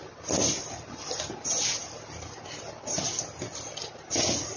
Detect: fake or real real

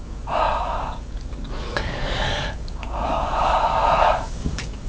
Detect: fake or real fake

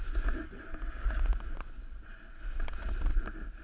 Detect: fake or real real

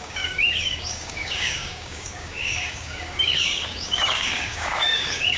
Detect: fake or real fake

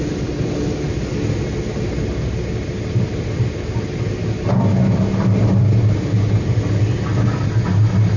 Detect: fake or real real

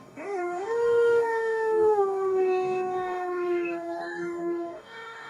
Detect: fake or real fake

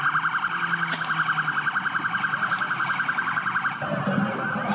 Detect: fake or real real